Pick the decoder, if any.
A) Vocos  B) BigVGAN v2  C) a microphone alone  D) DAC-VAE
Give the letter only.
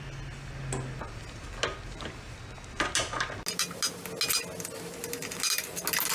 C